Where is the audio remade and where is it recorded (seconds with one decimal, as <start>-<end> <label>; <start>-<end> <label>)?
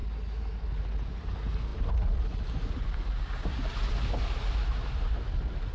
0.0-5.7 recorded